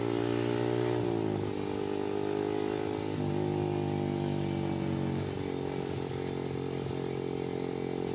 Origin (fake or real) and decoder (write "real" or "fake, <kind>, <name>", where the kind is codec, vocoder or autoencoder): real